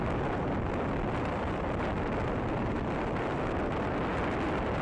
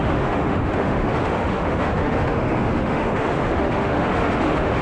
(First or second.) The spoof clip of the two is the second